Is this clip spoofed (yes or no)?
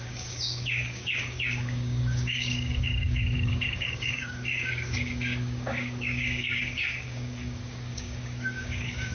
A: yes